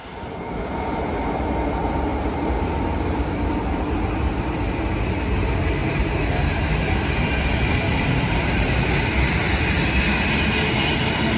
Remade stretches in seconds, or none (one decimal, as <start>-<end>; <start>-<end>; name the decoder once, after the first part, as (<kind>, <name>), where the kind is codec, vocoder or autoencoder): 5.8-6.3 (vocoder, BigVGAN v2); 7.9-8.9